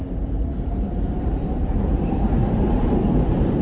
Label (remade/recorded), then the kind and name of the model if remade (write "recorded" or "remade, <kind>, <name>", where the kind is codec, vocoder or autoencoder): remade, vocoder, BigVGAN v2